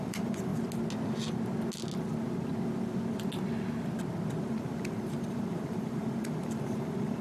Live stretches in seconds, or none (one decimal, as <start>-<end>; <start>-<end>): 0.5-4.4